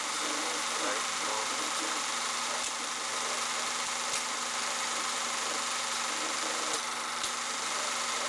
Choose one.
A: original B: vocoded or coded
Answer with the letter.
B